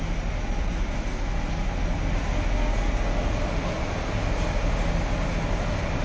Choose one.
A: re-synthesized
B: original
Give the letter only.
B